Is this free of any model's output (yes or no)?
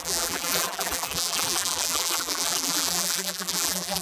no